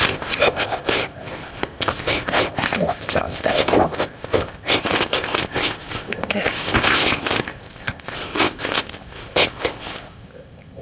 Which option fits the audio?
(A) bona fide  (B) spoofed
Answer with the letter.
B